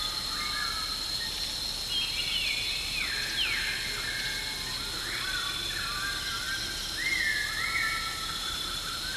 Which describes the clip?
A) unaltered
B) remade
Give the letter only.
A